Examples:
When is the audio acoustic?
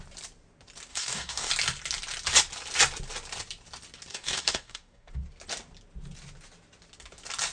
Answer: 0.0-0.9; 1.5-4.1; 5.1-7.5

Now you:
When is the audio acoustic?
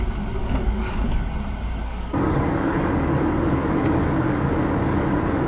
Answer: 0.0-0.4; 1.3-1.8; 5.1-5.5